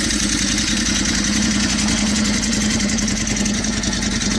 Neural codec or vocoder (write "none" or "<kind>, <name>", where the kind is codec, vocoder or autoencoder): vocoder, Vocos